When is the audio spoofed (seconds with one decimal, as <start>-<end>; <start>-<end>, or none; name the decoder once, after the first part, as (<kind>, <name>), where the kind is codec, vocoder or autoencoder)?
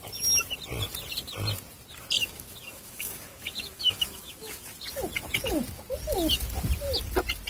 2.2-4.7 (autoencoder, DAC-VAE)